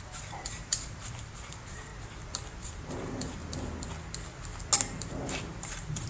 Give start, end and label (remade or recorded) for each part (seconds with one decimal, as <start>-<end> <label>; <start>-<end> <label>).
0.0-1.9 remade; 1.9-2.6 recorded; 2.6-3.4 remade; 3.4-5.1 recorded; 5.1-6.1 remade